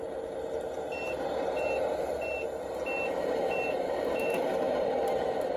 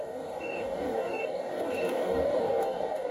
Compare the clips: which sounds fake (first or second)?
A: second